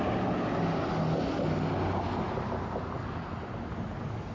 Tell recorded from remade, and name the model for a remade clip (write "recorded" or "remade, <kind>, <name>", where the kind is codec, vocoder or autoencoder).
recorded